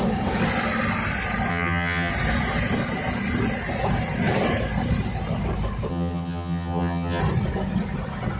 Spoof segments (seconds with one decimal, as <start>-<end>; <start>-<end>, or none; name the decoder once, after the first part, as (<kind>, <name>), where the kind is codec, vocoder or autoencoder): 1.5-2.1 (vocoder, HiFi-GAN); 5.9-7.2